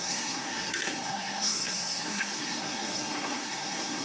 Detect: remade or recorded remade